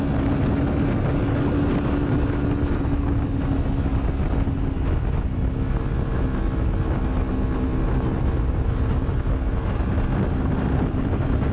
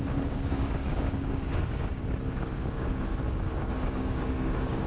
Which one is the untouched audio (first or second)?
first